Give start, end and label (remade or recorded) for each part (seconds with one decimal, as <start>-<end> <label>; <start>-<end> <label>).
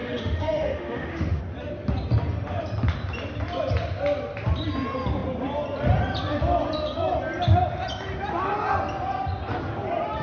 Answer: 0.0-1.4 remade; 1.4-10.2 recorded